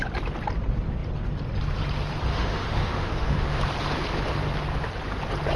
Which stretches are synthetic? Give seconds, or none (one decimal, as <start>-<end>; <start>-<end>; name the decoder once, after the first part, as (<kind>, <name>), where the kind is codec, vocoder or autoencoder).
2.3-3.6 (autoencoder, DAC-VAE)